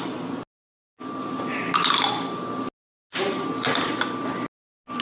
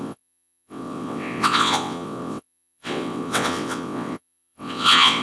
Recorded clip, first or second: first